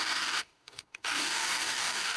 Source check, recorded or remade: remade